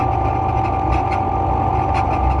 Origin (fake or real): real